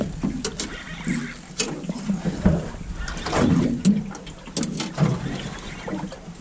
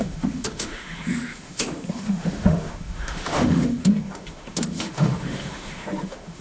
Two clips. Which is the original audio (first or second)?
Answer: first